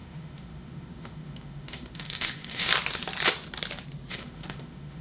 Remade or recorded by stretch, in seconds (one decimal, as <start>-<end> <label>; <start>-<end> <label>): 0.0-2.7 remade; 2.7-4.1 recorded; 4.1-5.0 remade